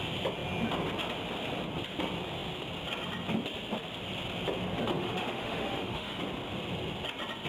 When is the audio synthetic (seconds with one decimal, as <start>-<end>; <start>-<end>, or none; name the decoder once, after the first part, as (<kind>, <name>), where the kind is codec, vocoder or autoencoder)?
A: 5.0-6.2 (autoencoder, DAC-VAE)